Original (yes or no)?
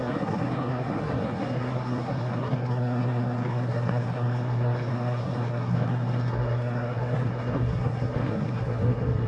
no